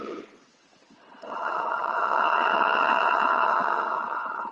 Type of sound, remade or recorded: remade